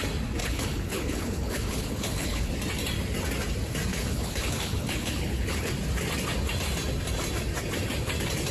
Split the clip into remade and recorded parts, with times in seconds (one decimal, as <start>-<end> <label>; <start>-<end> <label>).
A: 0.0-0.4 recorded; 0.4-2.5 remade; 2.5-3.9 recorded; 3.9-5.7 remade; 5.7-8.5 recorded